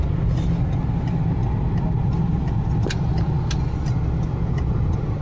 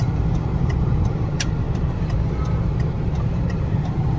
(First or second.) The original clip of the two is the first